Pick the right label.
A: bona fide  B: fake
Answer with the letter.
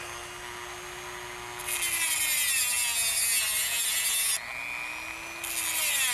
A